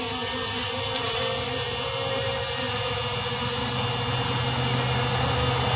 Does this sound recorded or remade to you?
recorded